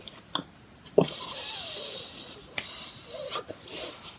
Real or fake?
real